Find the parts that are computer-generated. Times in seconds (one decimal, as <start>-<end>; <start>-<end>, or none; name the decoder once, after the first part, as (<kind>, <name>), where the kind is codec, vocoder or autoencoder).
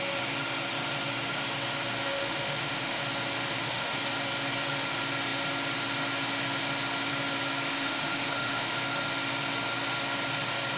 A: 2.1-3.0 (autoencoder, DAC-VAE); 3.5-4.0; 7.7-8.7